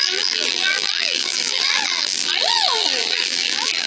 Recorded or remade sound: remade